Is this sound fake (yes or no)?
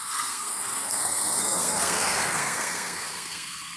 yes